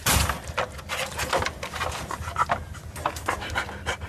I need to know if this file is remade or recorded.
recorded